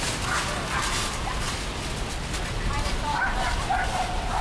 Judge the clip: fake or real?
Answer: real